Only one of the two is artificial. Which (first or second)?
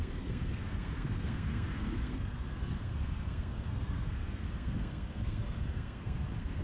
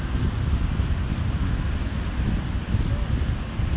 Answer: first